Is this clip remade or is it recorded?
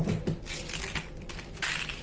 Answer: recorded